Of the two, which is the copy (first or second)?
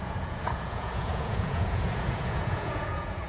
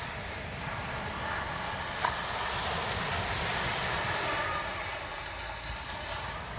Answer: first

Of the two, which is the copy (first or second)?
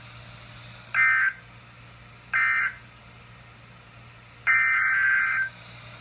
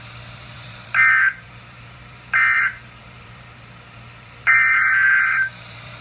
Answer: second